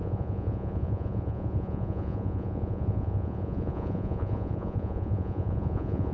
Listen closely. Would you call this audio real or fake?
fake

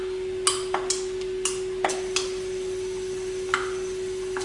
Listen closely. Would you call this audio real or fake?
real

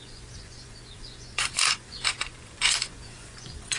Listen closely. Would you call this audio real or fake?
fake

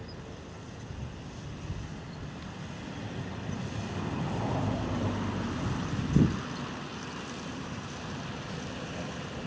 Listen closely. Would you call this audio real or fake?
real